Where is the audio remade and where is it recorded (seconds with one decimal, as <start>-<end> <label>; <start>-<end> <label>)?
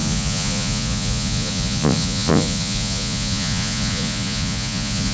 0.0-5.1 remade